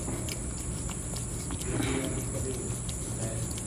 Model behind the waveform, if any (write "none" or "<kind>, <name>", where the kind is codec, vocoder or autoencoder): none